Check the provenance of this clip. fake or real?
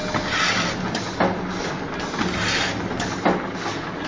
real